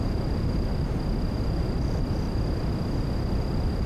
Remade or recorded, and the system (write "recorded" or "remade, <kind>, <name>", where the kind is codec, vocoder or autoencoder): recorded